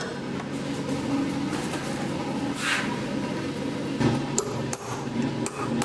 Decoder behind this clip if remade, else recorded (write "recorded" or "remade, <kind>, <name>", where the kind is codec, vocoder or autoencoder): recorded